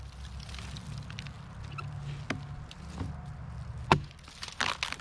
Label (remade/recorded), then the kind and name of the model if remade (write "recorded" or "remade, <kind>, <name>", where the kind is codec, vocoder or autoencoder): recorded